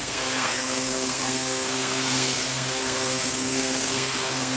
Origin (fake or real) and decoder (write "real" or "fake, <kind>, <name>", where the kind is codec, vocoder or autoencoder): fake, codec, SNAC